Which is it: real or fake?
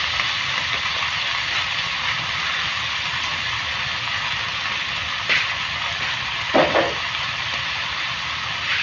real